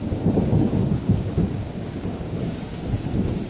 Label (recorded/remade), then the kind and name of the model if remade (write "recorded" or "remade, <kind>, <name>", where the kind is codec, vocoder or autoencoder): remade, codec, DAC